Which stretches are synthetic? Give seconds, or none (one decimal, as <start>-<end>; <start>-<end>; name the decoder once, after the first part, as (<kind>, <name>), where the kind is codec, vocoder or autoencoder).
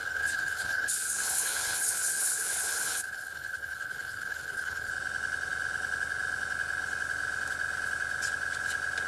0.0-4.9 (codec, HILCodec)